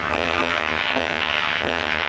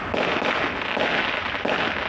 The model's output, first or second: first